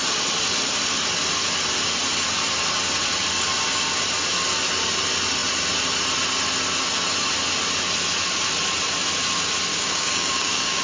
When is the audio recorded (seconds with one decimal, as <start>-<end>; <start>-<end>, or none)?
0.0-9.7